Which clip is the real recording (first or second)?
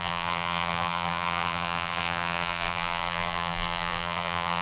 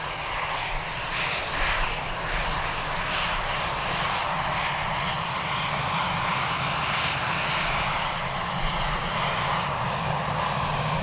second